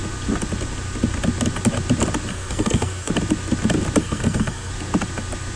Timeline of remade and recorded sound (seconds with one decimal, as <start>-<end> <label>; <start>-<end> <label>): 0.0-2.3 recorded; 2.3-3.1 remade; 3.1-4.0 recorded; 4.0-4.7 remade; 4.7-5.6 recorded